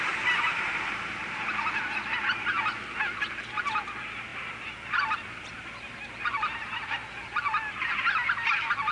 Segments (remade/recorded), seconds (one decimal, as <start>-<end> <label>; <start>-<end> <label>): 0.0-8.9 recorded